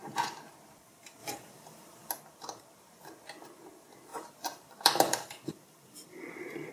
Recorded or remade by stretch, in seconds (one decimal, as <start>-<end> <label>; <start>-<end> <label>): 0.0-1.2 recorded; 1.2-2.1 remade; 2.1-4.1 recorded; 4.1-6.7 remade